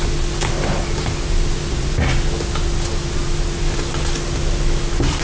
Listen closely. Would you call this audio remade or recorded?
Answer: recorded